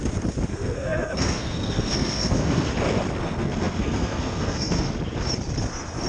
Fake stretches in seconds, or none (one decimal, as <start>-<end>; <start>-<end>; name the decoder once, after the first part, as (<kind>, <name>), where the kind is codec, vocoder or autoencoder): 0.5-2.7 (codec, SNAC); 3.2-4.9